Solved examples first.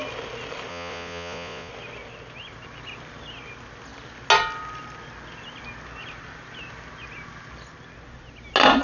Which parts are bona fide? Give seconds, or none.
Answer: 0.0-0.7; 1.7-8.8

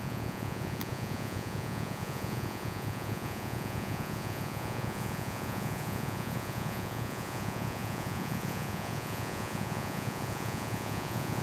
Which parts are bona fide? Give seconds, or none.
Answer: none

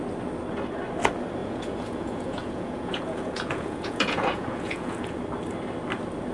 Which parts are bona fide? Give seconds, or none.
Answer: 0.0-1.4; 5.2-6.3

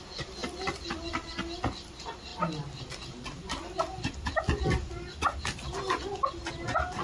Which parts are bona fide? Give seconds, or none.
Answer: 0.0-7.0

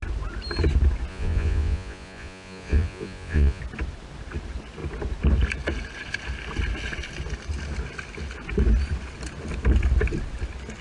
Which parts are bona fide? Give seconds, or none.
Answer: 0.0-1.1; 3.6-10.8

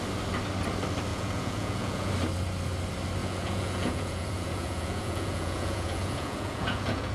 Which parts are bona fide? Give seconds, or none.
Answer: 0.0-1.1; 2.1-3.2